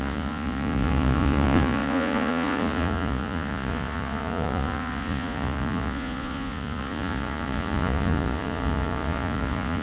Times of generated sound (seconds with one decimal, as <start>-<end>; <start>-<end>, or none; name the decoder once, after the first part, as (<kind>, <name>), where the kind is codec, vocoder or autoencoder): 0.0-9.8 (vocoder, Vocos)